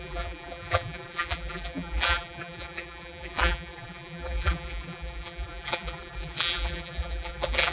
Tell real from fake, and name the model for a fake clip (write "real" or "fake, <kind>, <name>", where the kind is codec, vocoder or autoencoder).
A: fake, vocoder, BigVGAN v2